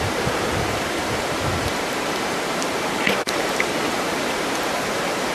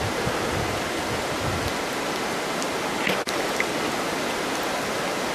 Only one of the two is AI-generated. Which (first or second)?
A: first